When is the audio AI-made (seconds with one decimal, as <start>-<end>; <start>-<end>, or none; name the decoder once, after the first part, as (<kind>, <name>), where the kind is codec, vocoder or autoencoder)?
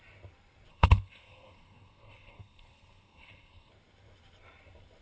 0.7-3.7 (codec, SNAC)